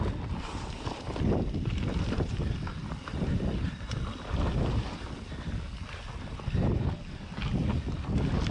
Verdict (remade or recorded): recorded